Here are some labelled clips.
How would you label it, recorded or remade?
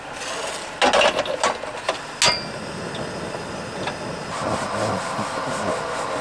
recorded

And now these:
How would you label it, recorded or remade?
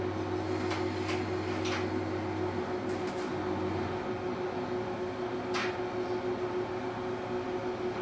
recorded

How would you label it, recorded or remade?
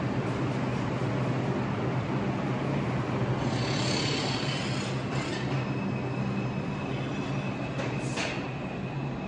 recorded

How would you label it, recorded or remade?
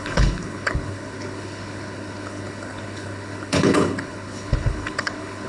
remade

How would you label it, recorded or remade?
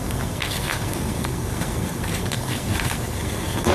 remade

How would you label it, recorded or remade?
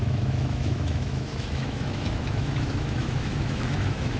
remade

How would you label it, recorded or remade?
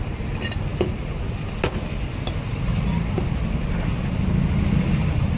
recorded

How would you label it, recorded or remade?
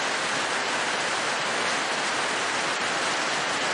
recorded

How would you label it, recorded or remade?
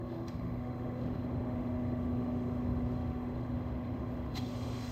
remade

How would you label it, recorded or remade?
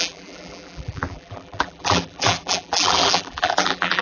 remade